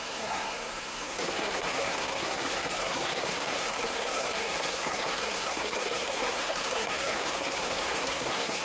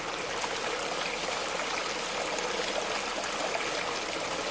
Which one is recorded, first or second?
second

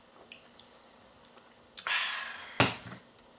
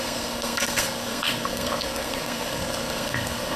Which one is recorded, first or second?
first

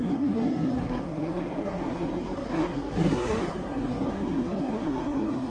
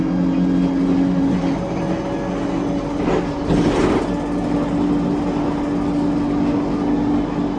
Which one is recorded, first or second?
second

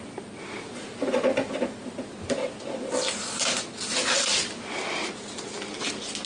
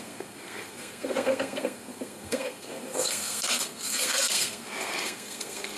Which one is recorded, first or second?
first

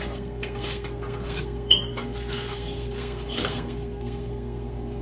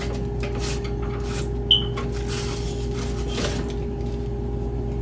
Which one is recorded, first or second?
second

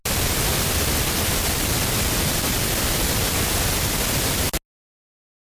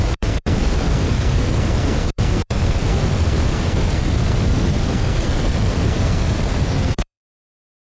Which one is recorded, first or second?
first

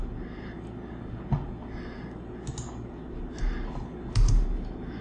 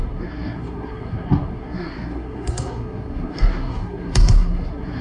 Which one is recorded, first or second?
first